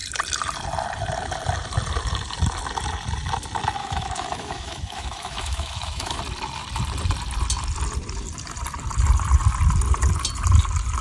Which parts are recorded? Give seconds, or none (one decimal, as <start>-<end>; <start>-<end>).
0.0-3.8; 6.2-11.0